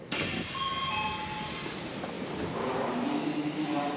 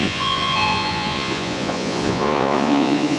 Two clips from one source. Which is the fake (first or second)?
second